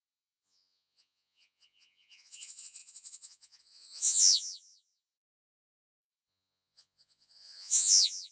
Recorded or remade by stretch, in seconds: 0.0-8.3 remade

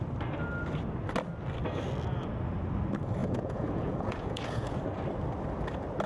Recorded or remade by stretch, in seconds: 0.0-3.2 recorded; 3.2-4.8 remade; 4.8-6.1 recorded

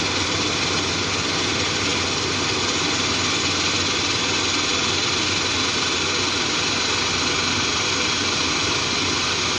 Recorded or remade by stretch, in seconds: 0.0-9.6 recorded

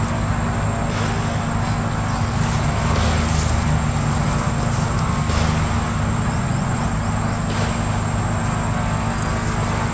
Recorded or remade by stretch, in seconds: 0.0-6.3 recorded; 6.3-6.8 remade; 6.8-9.9 recorded

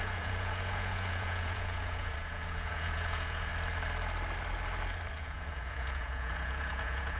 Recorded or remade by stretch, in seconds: 0.0-3.5 remade; 3.5-5.1 recorded; 5.1-7.2 remade